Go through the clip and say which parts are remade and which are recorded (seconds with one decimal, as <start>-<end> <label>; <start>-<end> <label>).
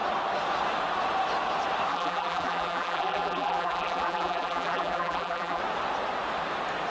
0.0-1.9 recorded; 1.9-5.6 remade; 5.6-6.9 recorded